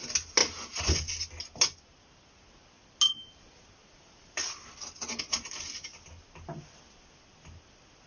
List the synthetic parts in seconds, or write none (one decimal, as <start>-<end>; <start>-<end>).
none